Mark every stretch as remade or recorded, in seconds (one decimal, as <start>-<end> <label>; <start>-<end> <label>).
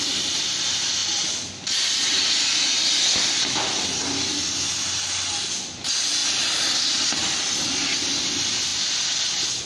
0.0-9.7 recorded